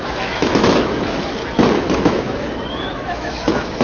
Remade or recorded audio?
remade